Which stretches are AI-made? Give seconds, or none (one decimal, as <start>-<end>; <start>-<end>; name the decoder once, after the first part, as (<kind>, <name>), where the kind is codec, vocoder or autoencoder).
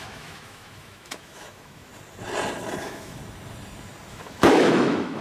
0.0-1.9 (autoencoder, DAC-VAE); 2.8-3.2; 4.1-5.2